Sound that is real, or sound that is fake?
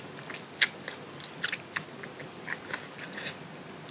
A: real